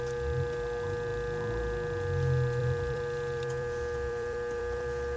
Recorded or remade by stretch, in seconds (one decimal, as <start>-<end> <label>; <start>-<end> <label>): 0.0-2.6 recorded; 2.6-5.2 remade